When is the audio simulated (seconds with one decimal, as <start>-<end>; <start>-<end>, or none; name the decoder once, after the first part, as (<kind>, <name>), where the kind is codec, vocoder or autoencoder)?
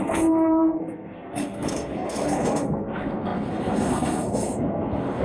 0.0-5.2 (codec, SNAC)